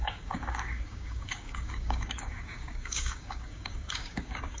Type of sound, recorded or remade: remade